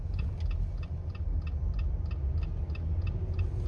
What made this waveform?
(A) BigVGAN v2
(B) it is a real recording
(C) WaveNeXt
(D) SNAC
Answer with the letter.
B